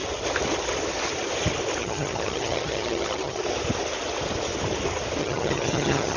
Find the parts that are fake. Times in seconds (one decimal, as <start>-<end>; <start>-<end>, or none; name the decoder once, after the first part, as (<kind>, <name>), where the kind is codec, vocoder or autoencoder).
1.8-3.4 (vocoder, HiFi-GAN); 5.2-6.2